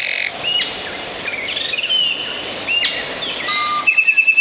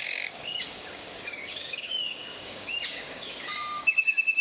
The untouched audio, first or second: first